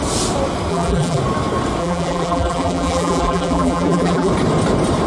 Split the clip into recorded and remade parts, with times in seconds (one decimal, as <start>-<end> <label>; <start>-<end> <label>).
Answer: 0.0-0.7 recorded; 0.7-1.2 remade; 1.2-1.8 recorded; 1.8-4.3 remade; 4.3-5.1 recorded